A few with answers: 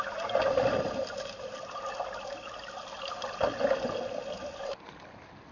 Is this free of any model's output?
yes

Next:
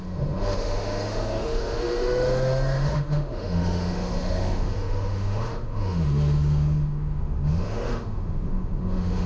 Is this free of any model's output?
no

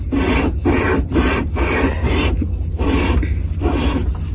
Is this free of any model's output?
yes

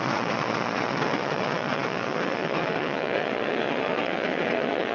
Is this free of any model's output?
no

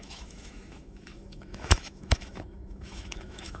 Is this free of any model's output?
no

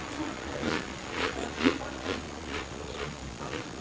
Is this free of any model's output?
no